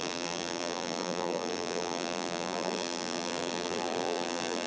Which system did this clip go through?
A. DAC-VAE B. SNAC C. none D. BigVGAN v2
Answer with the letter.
D